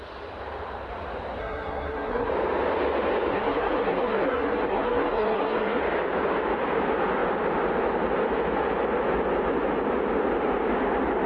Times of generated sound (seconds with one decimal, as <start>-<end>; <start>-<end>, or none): 1.4-2.3; 3.3-5.8